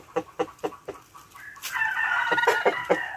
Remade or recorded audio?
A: recorded